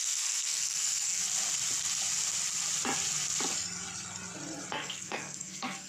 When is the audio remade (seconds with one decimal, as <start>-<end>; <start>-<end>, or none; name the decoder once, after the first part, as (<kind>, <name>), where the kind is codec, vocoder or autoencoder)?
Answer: 0.0-1.2 (codec, SNAC); 4.7-5.9